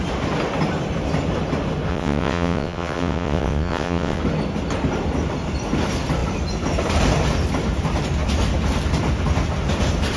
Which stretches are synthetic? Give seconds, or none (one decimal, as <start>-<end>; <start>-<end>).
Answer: 1.9-4.2